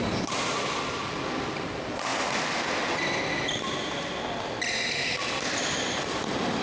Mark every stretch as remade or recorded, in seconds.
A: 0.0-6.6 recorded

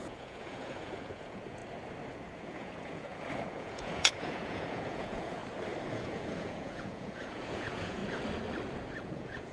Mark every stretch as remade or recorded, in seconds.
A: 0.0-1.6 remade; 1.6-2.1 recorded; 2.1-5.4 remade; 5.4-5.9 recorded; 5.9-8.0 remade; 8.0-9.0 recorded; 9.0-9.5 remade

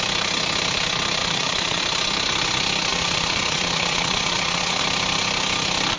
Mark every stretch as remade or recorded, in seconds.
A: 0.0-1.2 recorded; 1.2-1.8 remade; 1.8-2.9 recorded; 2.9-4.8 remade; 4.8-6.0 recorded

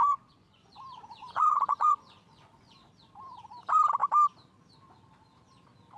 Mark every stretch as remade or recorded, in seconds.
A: 0.0-0.6 remade; 0.6-1.2 recorded; 1.2-2.9 remade; 2.9-6.0 recorded

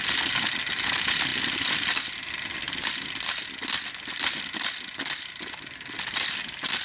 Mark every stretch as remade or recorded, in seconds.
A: 0.0-6.8 recorded

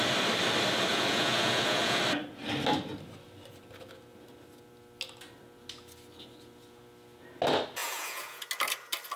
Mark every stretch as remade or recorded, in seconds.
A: 0.0-0.9 recorded; 0.9-2.0 remade; 2.0-7.8 recorded; 7.8-8.5 remade; 8.5-9.2 recorded

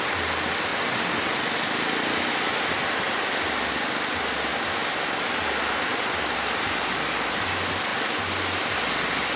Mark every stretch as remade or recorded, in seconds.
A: 0.0-9.4 recorded